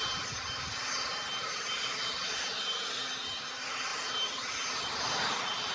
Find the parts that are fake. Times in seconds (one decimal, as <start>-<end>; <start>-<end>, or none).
none